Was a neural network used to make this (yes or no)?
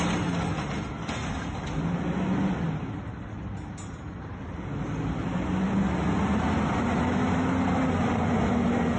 no